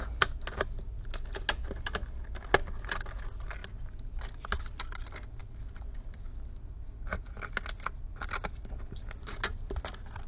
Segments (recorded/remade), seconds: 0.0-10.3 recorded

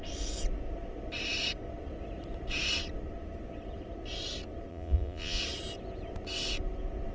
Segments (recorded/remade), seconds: 0.0-4.7 recorded; 4.7-5.4 remade; 5.4-7.1 recorded